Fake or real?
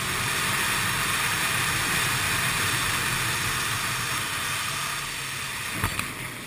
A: real